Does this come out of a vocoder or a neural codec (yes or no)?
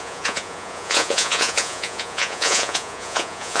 yes